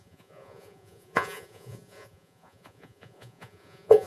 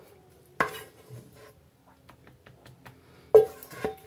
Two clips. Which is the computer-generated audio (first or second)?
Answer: first